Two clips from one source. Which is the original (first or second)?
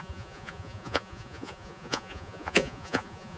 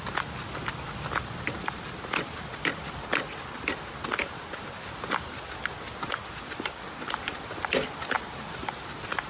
second